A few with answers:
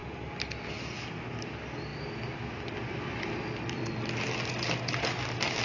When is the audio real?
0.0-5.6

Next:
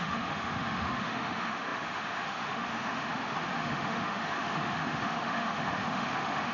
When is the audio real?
none

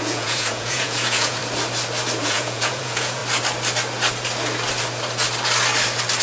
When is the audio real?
1.4-2.2; 3.2-6.2

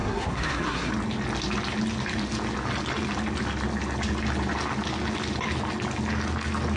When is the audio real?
0.9-6.8

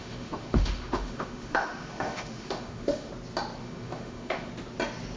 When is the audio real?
3.1-3.6; 4.5-5.2